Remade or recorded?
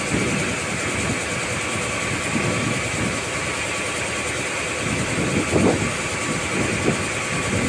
recorded